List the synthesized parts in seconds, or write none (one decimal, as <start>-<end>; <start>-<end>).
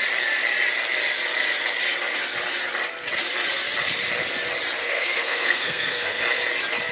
4.8-6.2